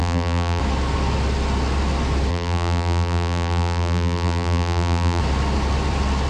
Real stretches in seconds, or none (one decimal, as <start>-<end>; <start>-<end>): 0.6-2.3; 5.2-6.3